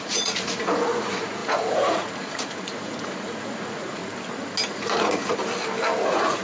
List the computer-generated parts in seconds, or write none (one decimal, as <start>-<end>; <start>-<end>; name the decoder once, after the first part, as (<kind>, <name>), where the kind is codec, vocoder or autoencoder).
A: 0.0-4.0 (vocoder, Vocos); 4.7-5.4; 6.0-6.4